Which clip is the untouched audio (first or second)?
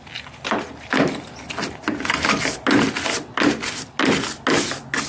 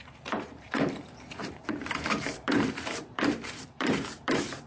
first